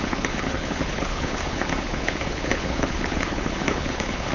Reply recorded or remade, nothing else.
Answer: remade